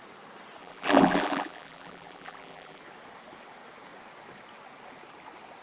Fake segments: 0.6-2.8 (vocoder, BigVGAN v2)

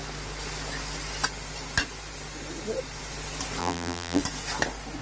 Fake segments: 3.6-4.2 (vocoder, BigVGAN v2)

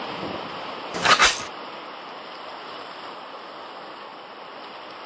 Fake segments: 1.2-3.1 (vocoder, BigVGAN v2); 4.1-5.1

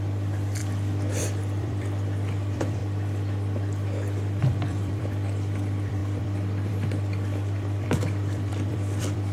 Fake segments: 0.0-0.6 (vocoder, BigVGAN v2); 1.2-2.8; 4.4-9.3

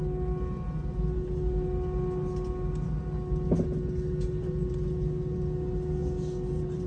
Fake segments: none

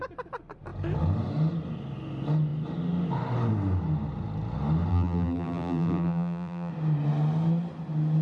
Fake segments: 4.9-6.7 (vocoder, BigVGAN v2)